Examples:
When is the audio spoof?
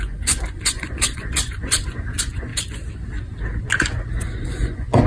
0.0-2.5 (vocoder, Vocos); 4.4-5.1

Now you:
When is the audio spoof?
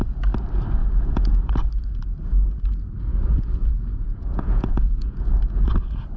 0.8-1.5 (vocoder, Vocos); 3.1-5.2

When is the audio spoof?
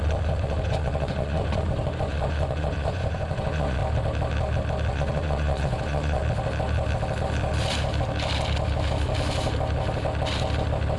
0.0-3.8 (vocoder, Vocos); 4.9-6.2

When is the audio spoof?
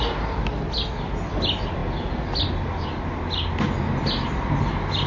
none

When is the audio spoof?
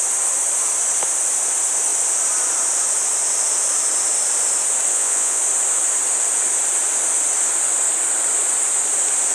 4.9-5.4 (vocoder, Vocos)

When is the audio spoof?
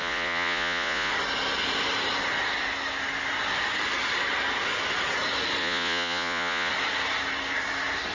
0.0-1.1 (vocoder, Vocos); 5.6-6.7